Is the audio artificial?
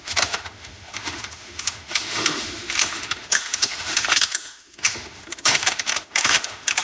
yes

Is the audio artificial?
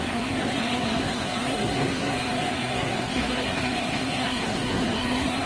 yes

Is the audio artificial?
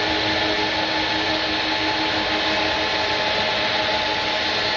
no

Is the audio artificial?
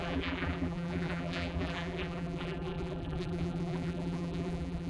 yes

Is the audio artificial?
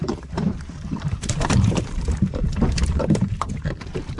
yes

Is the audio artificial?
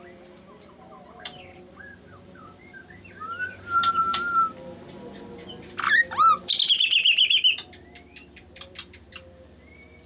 yes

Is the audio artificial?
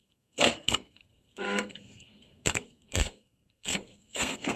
yes